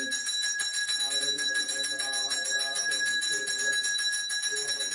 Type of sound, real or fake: real